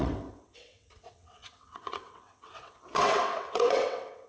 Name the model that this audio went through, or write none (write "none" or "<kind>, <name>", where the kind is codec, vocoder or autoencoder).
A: vocoder, WaveNeXt